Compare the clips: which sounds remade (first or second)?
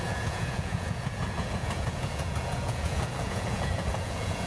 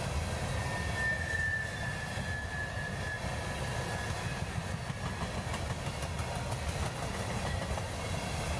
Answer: first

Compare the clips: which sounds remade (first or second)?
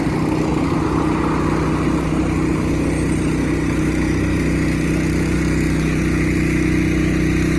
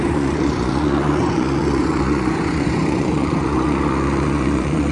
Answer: second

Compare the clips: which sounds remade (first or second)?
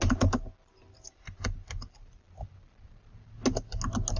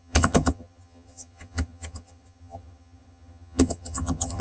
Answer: second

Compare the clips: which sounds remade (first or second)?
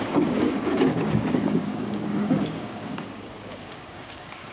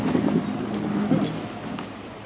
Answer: first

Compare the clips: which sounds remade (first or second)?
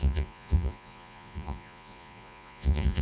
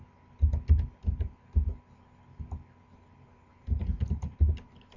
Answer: first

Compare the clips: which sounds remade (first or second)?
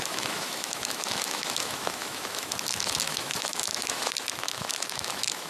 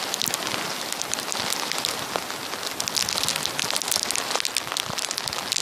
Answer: first